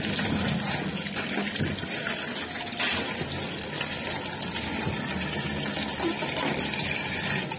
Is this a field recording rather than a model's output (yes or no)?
yes